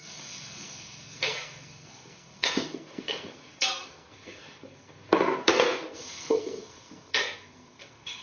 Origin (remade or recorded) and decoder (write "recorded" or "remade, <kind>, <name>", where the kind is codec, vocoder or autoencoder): remade, codec, SNAC